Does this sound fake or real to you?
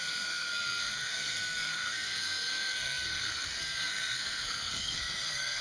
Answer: fake